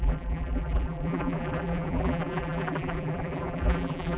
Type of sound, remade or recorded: remade